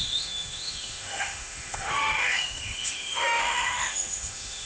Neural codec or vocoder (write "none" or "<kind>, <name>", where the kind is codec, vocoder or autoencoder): autoencoder, DAC-VAE